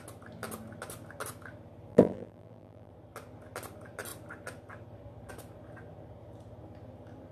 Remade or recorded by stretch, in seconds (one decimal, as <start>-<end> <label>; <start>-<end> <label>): 0.0-1.9 recorded; 1.9-2.9 remade; 2.9-7.3 recorded